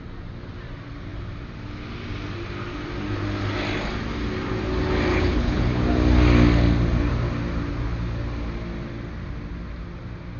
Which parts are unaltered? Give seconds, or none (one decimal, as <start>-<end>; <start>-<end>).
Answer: 0.0-5.1; 5.8-10.4